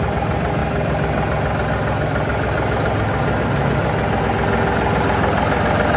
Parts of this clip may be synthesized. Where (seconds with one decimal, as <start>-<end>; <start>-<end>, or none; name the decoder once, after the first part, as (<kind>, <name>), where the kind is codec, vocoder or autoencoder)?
none